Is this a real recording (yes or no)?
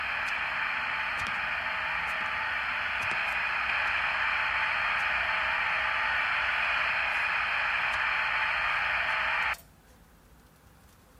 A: yes